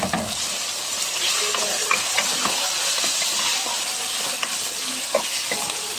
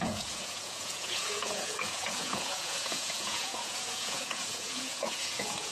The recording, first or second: first